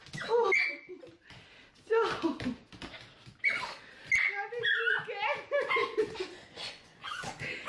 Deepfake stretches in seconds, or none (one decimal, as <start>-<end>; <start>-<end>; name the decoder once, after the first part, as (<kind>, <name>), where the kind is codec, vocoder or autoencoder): 5.8-7.3 (vocoder, Vocos)